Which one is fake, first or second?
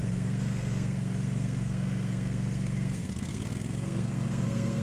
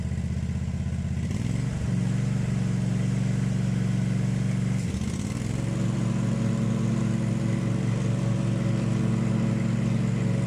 first